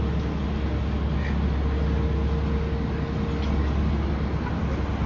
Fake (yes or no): no